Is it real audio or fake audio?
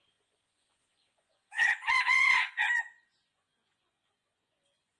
fake